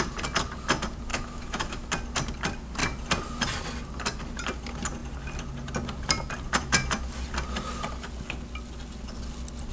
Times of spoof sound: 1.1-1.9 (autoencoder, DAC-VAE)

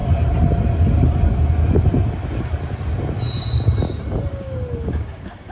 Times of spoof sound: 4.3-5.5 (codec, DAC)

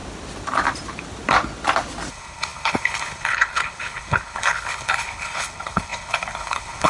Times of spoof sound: 2.1-6.9 (codec, HILCodec)

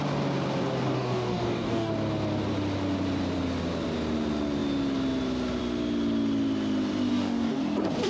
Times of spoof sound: 0.7-1.9 (codec, DAC); 7.1-7.6

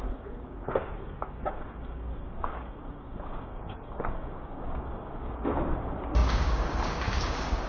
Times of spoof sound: 0.0-7.7 (codec, DAC)

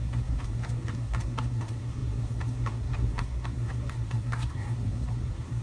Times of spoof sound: 0.0-5.6 (codec, SNAC)